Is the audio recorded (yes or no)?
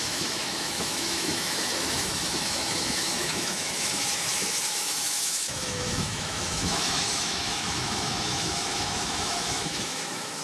no